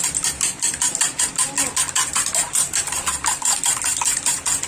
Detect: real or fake real